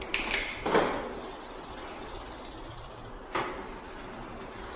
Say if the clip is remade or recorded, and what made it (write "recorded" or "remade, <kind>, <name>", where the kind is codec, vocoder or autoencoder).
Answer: recorded